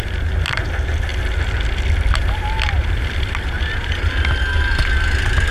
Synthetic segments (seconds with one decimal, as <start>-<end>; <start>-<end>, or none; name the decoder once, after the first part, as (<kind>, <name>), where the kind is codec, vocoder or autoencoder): none